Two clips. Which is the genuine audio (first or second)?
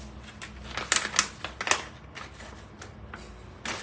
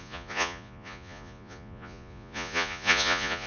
first